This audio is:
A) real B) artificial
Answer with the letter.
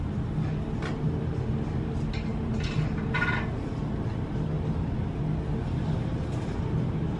A